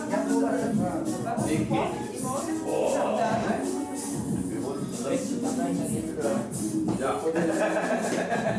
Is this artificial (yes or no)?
no